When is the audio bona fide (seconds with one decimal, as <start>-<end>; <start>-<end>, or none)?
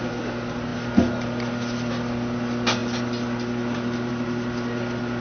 0.0-5.2